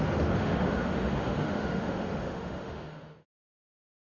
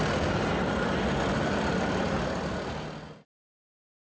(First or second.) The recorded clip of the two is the second